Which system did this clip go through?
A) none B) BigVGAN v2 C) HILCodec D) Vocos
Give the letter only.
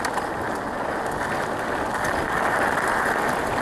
A